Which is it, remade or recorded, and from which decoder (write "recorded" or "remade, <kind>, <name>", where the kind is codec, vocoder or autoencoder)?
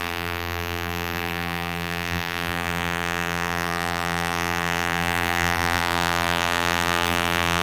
remade, vocoder, BigVGAN v2